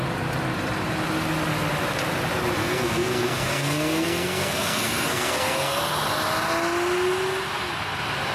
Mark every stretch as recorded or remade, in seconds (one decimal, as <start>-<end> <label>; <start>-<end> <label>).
0.0-2.6 recorded; 2.6-5.8 remade; 5.8-8.3 recorded